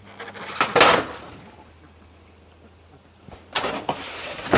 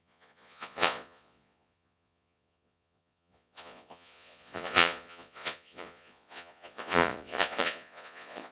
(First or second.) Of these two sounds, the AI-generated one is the second